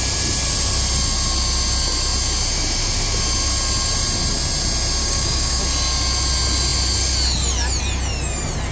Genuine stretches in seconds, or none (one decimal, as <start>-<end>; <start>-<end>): 0.0-5.0; 5.6-8.7